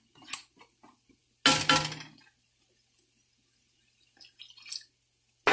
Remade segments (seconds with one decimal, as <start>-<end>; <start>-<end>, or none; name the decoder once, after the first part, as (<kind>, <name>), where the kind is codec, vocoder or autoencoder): none